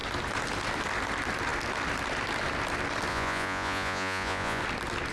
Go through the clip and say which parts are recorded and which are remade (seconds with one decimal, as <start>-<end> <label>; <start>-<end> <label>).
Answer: 0.0-3.1 recorded; 3.1-4.6 remade; 4.6-5.1 recorded